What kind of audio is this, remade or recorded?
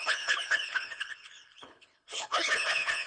remade